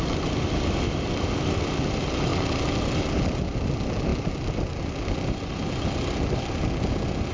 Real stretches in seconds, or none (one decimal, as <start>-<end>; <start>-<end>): 0.0-7.3